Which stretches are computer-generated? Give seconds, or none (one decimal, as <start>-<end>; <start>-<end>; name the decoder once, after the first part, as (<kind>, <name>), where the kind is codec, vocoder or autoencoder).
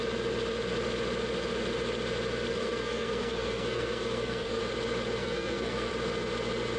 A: 2.5-4.6 (codec, SNAC); 5.2-5.9